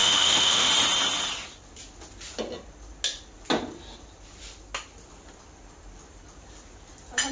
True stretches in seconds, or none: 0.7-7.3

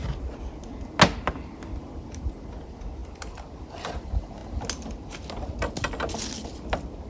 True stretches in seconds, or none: 0.0-7.1